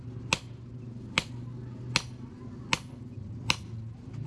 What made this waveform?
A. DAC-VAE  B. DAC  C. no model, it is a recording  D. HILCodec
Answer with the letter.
C